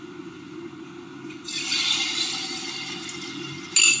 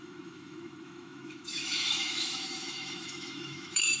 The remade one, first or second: second